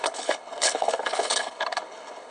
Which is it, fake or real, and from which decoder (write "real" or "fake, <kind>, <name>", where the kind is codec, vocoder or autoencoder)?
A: fake, codec, HILCodec